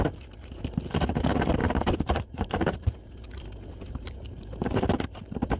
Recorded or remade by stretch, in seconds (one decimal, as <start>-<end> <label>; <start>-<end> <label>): 0.0-1.6 recorded; 1.6-4.4 remade; 4.4-5.6 recorded